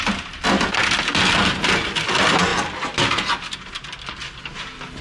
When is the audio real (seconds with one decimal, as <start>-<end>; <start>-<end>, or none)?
0.0-5.0